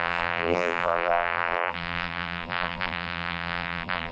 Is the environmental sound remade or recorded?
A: remade